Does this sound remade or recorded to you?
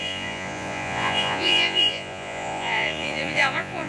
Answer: remade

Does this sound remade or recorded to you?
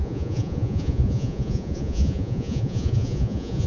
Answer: remade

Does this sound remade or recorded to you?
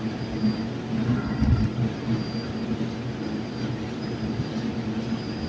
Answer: recorded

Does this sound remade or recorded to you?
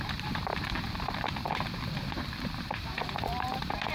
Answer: remade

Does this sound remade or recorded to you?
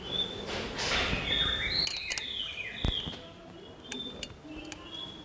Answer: recorded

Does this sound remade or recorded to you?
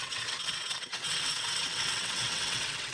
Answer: remade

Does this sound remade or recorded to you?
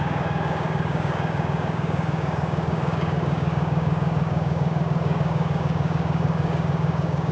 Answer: remade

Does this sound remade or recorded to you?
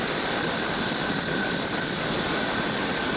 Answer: recorded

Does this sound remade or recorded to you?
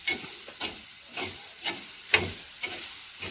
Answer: recorded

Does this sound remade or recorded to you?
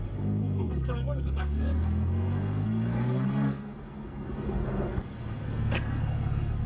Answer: remade